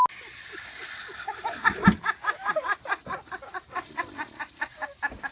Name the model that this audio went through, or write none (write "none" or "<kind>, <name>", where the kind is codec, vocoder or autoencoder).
none